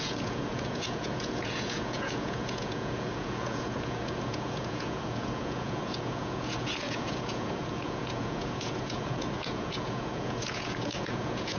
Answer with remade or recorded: remade